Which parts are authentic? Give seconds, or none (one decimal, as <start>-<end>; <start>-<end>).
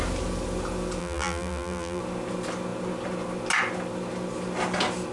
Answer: 0.0-1.0; 2.0-5.1